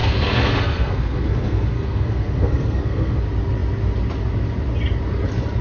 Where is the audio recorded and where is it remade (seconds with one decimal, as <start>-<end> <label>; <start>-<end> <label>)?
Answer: 0.0-3.2 remade; 3.2-5.6 recorded